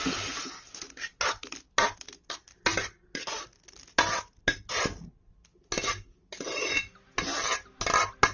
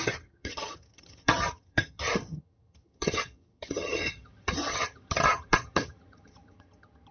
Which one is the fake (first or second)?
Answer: second